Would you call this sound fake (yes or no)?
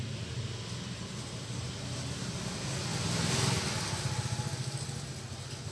no